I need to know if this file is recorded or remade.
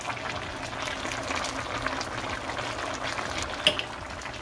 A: recorded